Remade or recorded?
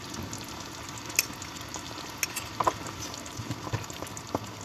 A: recorded